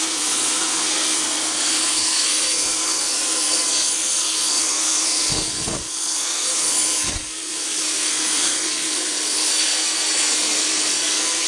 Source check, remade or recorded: remade